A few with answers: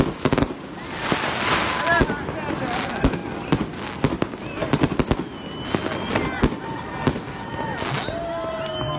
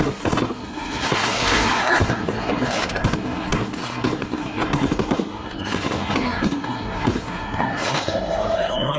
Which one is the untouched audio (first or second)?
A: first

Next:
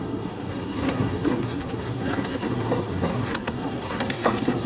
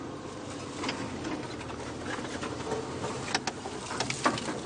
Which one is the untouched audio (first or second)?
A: second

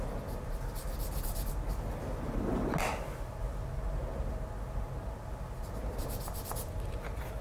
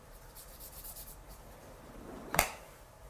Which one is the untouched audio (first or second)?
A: first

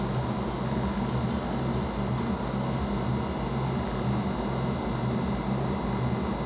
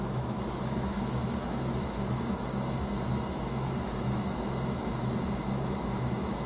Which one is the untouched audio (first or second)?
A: first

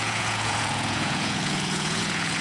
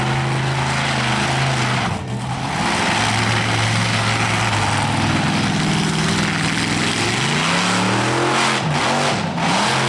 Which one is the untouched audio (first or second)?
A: second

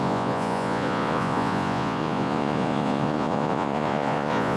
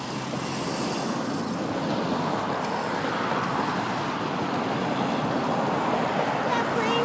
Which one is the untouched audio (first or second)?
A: second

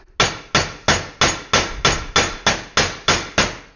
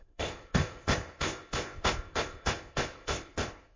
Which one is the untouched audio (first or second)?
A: first